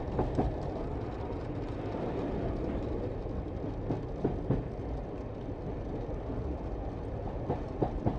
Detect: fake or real real